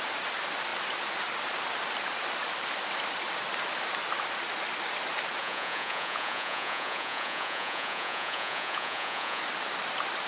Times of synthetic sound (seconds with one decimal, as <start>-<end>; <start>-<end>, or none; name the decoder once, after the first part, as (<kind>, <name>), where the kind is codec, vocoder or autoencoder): 5.4-9.4 (vocoder, Vocos)